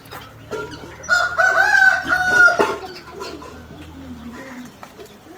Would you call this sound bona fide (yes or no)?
no